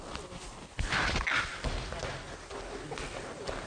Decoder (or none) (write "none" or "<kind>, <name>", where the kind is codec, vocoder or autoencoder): none